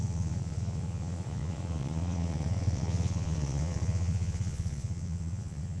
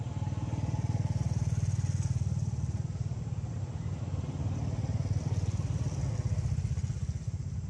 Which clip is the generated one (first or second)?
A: first